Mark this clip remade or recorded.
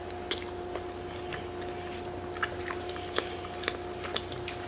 recorded